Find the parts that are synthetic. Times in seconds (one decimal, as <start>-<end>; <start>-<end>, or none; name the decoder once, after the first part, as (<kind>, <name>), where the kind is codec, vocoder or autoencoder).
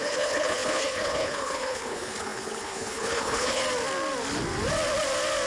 0.0-3.6 (codec, HILCodec)